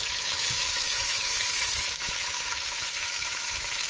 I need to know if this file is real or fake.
fake